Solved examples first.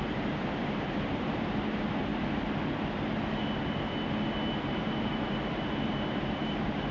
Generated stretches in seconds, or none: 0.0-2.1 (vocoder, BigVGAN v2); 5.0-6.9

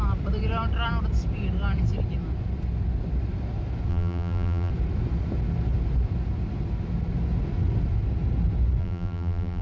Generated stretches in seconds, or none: 3.9-4.7 (vocoder, BigVGAN v2); 8.8-9.6

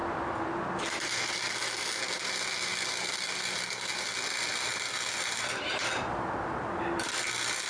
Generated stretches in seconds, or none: 0.7-7.7 (vocoder, BigVGAN v2)

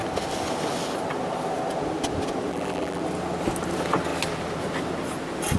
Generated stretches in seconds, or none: 2.5-3.0 (vocoder, BigVGAN v2)

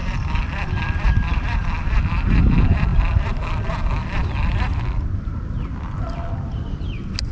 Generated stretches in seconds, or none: 0.0-2.0 (vocoder, BigVGAN v2)

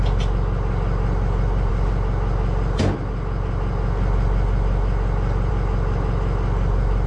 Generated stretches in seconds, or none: none

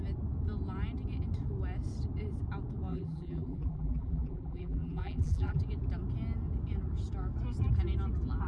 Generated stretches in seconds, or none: 2.9-5.6 (vocoder, BigVGAN v2)